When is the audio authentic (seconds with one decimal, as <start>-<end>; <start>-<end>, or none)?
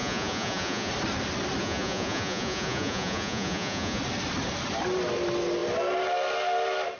0.9-1.6; 4.0-7.0